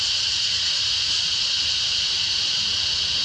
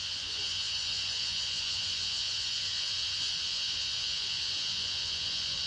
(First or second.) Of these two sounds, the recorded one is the first